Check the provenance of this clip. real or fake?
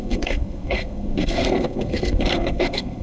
fake